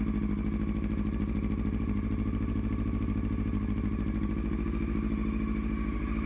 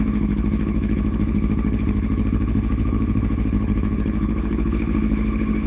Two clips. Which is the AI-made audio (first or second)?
second